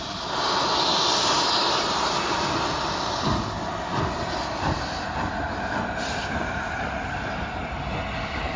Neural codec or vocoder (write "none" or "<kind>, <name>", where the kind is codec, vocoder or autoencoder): none